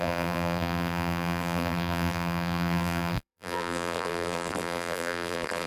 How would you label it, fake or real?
fake